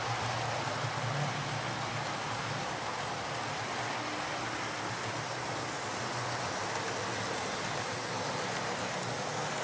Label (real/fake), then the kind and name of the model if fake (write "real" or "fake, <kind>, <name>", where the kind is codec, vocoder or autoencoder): real